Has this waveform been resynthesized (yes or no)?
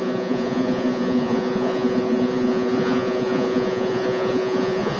yes